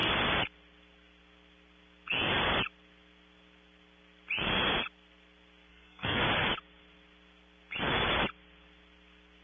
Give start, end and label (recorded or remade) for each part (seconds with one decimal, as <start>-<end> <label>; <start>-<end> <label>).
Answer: 0.0-5.7 recorded; 5.7-6.2 remade; 6.2-9.4 recorded